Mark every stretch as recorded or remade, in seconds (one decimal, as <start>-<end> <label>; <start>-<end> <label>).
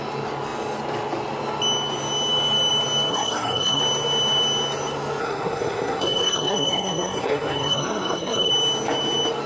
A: 0.0-3.1 recorded; 3.1-3.8 remade; 3.8-5.2 recorded; 5.2-8.5 remade; 8.5-9.5 recorded